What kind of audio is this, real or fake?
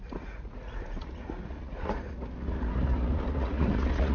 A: fake